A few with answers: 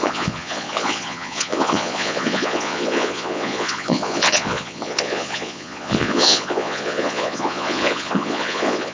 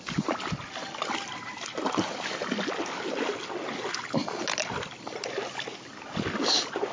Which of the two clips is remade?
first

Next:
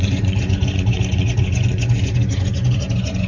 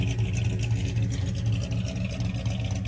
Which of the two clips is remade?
first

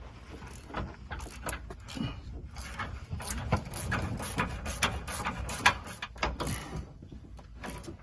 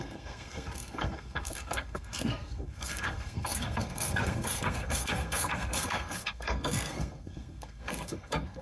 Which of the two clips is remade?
second